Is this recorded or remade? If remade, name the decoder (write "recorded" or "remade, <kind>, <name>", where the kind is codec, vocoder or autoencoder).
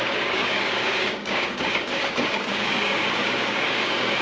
remade, codec, DAC